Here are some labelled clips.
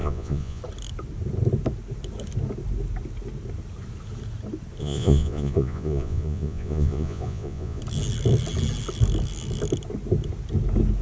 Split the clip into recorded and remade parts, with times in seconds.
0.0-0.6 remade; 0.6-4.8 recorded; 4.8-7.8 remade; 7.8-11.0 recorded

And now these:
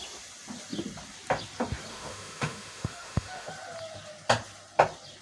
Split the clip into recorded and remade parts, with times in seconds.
0.0-1.9 recorded; 1.9-3.5 remade; 3.5-5.2 recorded

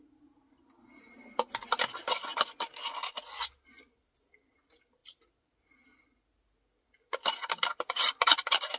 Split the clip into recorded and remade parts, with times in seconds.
0.0-8.8 recorded

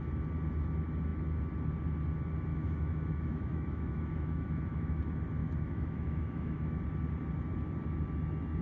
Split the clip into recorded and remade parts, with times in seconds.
0.0-2.5 recorded; 2.5-5.0 remade; 5.0-5.4 recorded; 5.4-6.8 remade; 6.8-8.6 recorded

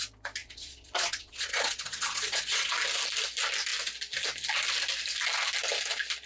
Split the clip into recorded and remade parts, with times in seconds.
0.0-0.4 recorded; 0.4-2.7 remade; 2.7-6.3 recorded